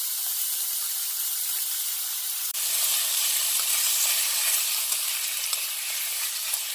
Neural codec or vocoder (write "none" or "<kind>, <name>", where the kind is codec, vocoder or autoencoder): vocoder, BigVGAN v2